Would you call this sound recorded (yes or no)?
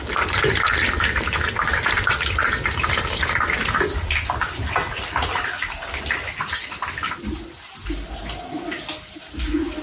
yes